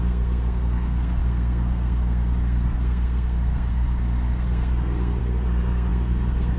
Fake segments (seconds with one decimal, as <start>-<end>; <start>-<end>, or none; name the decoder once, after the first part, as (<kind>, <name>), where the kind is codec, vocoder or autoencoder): 0.0-6.6 (codec, SNAC)

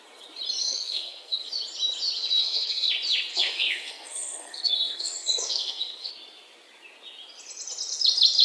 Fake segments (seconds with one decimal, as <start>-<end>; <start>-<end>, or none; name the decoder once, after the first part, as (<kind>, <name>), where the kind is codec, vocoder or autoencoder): 0.6-1.5 (codec, SNAC); 2.4-2.9; 3.3-6.1

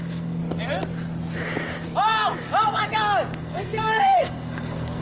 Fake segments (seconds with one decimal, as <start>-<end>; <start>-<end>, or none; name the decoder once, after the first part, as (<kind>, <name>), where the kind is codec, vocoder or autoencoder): 0.0-0.4 (codec, SNAC); 3.4-5.0

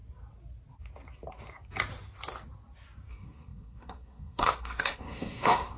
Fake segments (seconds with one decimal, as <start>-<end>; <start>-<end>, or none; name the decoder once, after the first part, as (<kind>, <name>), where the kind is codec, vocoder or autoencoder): 3.1-5.8 (codec, SNAC)

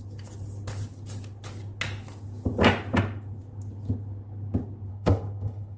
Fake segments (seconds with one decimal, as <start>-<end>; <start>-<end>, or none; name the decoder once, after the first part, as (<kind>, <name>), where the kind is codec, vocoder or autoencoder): 4.9-5.8 (codec, SNAC)

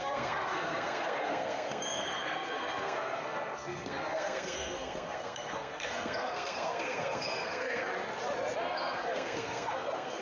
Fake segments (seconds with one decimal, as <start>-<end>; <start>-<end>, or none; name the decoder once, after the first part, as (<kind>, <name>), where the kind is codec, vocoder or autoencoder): 0.0-7.9 (codec, SNAC); 8.6-10.2

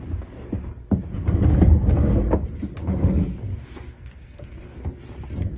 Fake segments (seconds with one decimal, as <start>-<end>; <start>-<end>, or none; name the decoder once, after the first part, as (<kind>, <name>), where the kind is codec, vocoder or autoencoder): 2.8-5.0 (codec, SNAC)

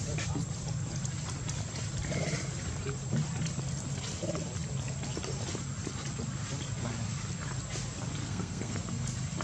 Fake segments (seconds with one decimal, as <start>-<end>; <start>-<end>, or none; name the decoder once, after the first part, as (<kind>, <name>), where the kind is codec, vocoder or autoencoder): 8.2-8.8 (codec, SNAC)